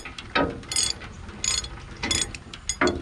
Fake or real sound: real